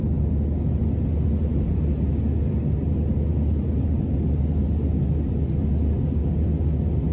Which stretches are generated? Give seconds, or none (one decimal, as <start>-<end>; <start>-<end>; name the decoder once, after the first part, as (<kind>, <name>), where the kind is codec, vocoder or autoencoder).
1.5-2.0 (vocoder, BigVGAN v2)

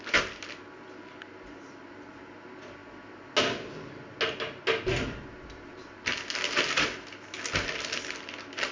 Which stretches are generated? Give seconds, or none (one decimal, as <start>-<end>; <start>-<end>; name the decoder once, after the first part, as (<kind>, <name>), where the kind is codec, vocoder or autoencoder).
none

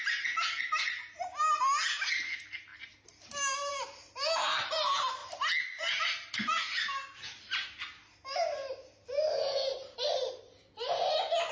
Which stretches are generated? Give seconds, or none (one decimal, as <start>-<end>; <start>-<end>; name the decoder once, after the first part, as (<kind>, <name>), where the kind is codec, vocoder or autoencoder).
none

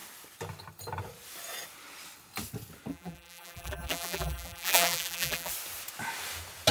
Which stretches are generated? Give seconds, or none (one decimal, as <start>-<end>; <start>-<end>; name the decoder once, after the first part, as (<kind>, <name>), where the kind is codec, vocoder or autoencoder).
2.9-5.5 (vocoder, BigVGAN v2)

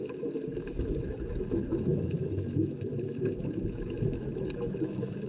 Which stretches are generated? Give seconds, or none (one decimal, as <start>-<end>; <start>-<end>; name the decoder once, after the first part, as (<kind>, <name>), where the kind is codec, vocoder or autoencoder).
0.0-5.3 (autoencoder, DAC-VAE)

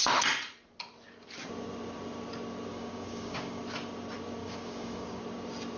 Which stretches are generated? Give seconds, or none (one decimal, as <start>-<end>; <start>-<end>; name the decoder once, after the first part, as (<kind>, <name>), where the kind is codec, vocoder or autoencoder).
2.7-3.6 (codec, DAC); 4.4-5.2

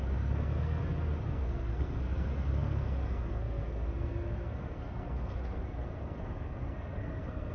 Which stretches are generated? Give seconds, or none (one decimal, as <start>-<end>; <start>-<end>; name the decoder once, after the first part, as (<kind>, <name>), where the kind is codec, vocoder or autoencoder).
0.0-0.8 (codec, SNAC); 1.3-7.5

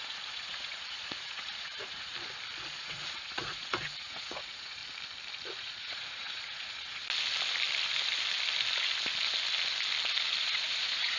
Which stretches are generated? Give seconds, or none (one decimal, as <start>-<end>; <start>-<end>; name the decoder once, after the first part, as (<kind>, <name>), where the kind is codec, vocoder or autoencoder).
0.0-2.1 (vocoder, Vocos); 2.8-4.8; 5.6-7.0; 10.4-11.2